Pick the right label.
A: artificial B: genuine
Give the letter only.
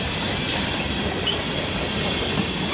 B